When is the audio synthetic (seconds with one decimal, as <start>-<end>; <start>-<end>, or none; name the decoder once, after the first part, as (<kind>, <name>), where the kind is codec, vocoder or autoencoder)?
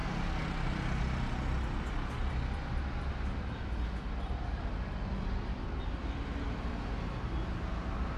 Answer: none